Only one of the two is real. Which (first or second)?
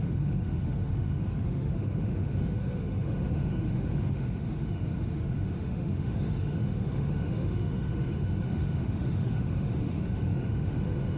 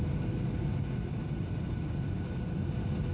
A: second